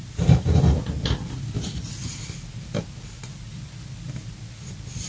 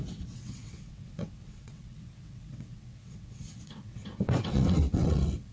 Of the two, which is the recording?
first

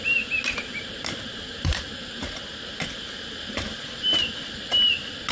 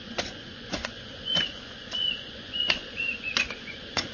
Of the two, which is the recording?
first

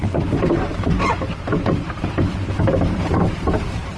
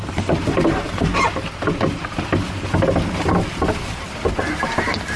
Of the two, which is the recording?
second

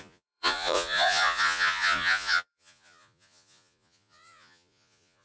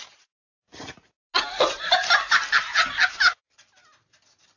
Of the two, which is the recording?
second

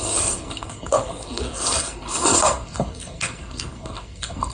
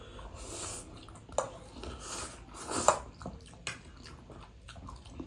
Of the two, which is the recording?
second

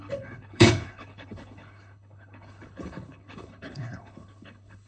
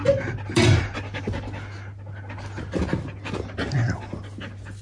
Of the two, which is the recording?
second